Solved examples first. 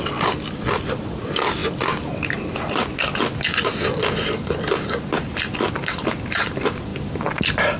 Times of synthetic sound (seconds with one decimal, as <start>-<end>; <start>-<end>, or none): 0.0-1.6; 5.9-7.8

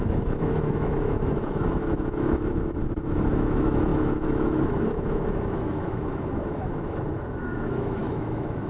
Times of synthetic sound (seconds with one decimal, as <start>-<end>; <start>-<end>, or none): 0.0-8.7

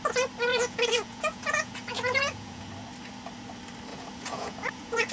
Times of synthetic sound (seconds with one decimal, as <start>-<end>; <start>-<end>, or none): 0.5-2.7; 3.9-5.1

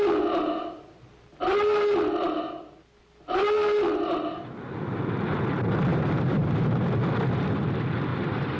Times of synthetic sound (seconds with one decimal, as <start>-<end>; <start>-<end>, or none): 5.9-6.8; 8.1-8.6

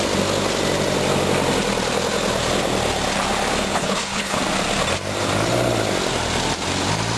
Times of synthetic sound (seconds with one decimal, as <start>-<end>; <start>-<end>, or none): 3.7-4.4

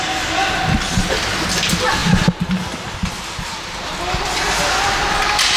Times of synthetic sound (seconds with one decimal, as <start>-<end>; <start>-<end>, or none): none

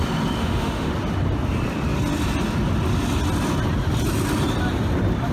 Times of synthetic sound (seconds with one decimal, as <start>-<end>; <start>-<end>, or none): 0.4-0.9